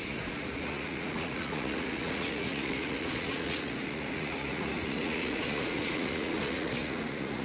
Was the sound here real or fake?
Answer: fake